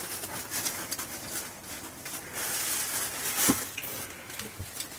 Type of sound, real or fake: real